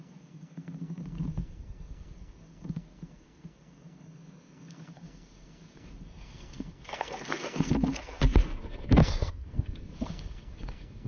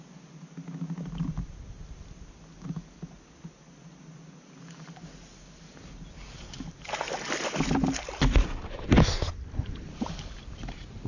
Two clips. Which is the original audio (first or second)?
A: second